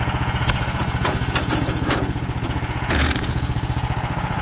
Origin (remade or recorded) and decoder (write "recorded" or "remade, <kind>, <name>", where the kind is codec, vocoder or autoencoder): remade, vocoder, Vocos